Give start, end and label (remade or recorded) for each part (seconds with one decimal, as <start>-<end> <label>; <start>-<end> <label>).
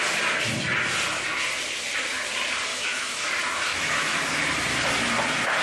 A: 0.0-2.7 recorded; 2.7-3.3 remade; 3.3-3.7 recorded; 3.7-4.2 remade; 4.2-5.6 recorded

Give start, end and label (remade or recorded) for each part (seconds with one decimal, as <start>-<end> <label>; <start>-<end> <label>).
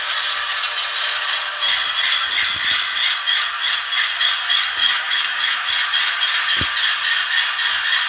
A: 0.0-4.8 recorded; 4.8-5.7 remade; 5.7-8.1 recorded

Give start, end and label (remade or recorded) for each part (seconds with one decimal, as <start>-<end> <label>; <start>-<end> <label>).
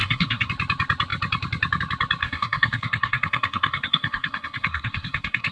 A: 0.0-0.5 remade; 0.5-2.2 recorded; 2.2-5.5 remade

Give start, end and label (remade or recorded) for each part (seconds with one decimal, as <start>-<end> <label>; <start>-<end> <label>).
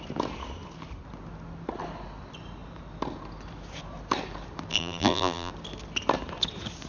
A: 0.0-4.7 recorded; 4.7-5.5 remade; 5.5-6.9 recorded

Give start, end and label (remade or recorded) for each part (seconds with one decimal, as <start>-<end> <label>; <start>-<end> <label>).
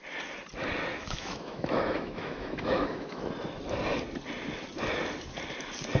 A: 0.0-0.9 recorded; 0.9-3.2 remade; 3.2-6.0 recorded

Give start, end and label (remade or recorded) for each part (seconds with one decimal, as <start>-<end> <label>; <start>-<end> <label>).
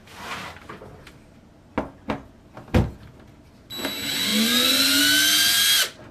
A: 0.0-6.1 recorded